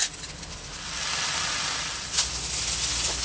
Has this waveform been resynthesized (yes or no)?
no